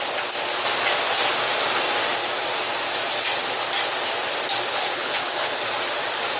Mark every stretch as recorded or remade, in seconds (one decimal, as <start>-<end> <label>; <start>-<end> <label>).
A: 0.0-4.7 recorded; 4.7-5.6 remade; 5.6-6.4 recorded

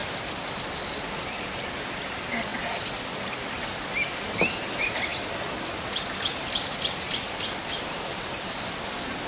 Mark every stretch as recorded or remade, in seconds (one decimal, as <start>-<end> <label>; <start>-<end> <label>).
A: 0.0-9.3 recorded